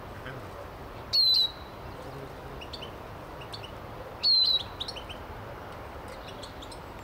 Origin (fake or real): real